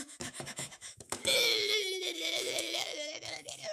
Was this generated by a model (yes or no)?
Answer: yes